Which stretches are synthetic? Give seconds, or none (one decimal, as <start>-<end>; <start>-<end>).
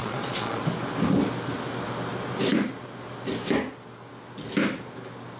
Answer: 0.0-0.6